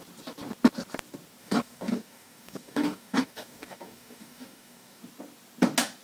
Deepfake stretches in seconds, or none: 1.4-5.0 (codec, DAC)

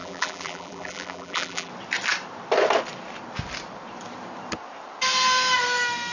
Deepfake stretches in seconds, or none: 0.0-1.7 (vocoder, BigVGAN v2)

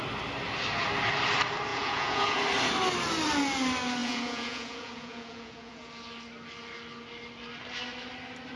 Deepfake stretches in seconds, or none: 1.7-2.4 (vocoder, Vocos); 4.0-5.9

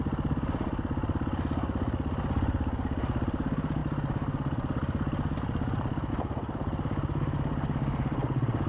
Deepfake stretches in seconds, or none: none

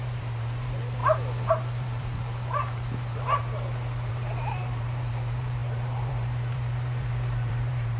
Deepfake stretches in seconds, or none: 0.0-1.0 (vocoder, BigVGAN v2); 1.5-3.4; 4.1-8.0

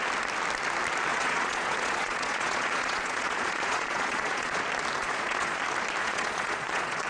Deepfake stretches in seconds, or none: 1.1-4.6 (vocoder, Vocos); 5.0-5.6; 6.0-7.1